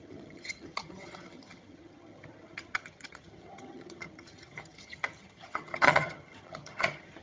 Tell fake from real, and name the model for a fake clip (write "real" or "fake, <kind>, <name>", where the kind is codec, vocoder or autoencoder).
fake, vocoder, HiFi-GAN